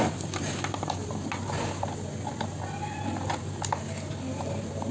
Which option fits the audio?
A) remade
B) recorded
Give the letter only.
B